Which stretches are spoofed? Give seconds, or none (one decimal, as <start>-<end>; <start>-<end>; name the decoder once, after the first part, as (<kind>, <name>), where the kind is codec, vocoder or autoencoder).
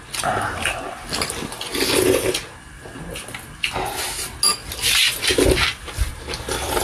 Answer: none